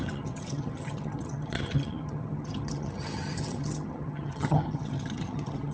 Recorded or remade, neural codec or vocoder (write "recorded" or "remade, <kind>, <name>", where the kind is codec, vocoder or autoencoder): remade, vocoder, HiFi-GAN